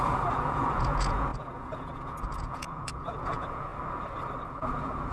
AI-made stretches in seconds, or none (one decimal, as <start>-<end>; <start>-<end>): 0.0-3.7; 4.5-5.1